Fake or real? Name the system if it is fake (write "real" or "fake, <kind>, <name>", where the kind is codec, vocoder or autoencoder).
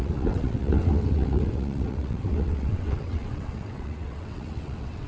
fake, vocoder, WaveNeXt